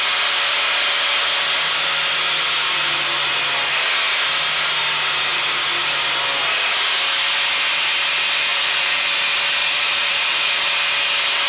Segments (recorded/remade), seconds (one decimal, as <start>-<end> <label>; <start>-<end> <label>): 0.0-8.5 recorded; 8.5-9.1 remade; 9.1-9.6 recorded; 9.6-10.6 remade; 10.6-11.5 recorded